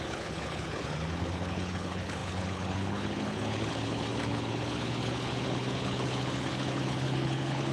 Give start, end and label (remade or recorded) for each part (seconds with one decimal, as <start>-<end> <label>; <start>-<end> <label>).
0.0-7.7 remade